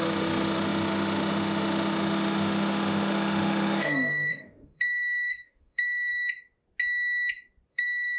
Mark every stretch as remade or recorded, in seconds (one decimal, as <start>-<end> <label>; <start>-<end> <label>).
0.0-6.1 remade; 6.1-7.7 recorded; 7.7-8.2 remade